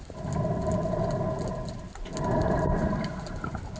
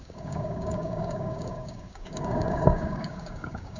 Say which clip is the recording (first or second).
first